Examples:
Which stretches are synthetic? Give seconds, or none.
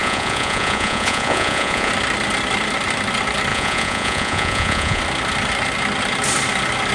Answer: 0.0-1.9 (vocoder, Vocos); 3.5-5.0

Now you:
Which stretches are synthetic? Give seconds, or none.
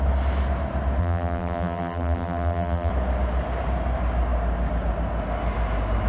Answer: 1.0-2.9 (vocoder, BigVGAN v2)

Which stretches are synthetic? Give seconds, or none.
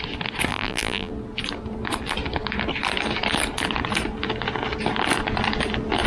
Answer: 0.5-1.1 (vocoder, BigVGAN v2)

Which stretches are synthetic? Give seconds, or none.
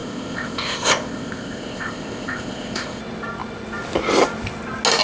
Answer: 0.0-3.0 (codec, ZipCodec)